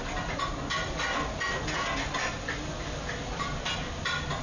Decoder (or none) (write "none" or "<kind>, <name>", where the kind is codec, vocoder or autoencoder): none